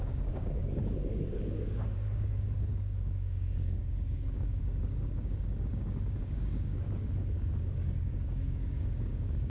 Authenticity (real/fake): fake